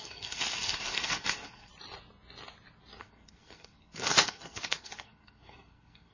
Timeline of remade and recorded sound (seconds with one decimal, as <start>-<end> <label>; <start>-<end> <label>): 0.0-1.7 remade; 1.7-3.0 recorded; 3.0-6.1 remade